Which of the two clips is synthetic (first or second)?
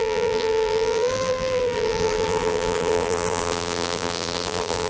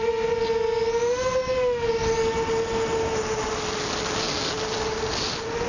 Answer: first